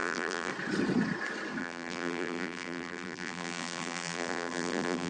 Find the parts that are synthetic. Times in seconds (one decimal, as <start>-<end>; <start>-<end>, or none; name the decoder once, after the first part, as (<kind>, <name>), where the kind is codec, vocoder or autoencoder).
0.0-0.5 (vocoder, BigVGAN v2); 1.6-5.1